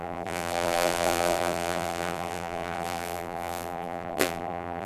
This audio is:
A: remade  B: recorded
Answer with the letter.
A